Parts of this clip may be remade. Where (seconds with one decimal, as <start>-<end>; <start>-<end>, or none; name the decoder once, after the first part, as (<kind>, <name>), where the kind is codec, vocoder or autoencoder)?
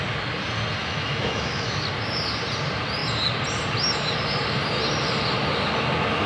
0.8-1.7 (autoencoder, DAC-VAE)